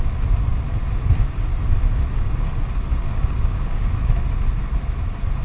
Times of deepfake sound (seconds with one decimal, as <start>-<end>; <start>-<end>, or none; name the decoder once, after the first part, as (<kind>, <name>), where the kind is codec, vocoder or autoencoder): 3.1-3.9 (codec, DAC)